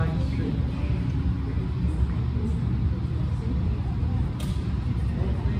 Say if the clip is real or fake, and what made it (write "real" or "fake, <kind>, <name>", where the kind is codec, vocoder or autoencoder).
real